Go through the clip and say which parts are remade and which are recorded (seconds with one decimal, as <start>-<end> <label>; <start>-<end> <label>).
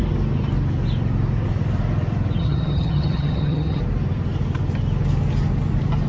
0.0-2.4 recorded; 2.4-3.8 remade; 3.8-6.1 recorded